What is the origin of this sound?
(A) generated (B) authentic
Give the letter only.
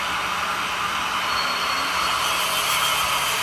B